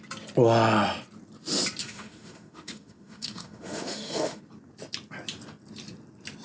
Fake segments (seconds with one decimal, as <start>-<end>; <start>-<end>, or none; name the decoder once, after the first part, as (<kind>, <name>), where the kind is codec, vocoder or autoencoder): 1.8-4.4 (autoencoder, DAC-VAE)